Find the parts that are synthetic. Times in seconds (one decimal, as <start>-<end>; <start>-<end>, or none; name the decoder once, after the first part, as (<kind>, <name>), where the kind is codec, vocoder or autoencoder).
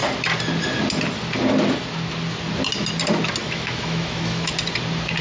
3.4-4.5 (autoencoder, DAC-VAE)